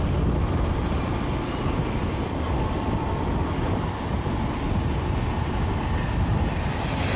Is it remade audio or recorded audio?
recorded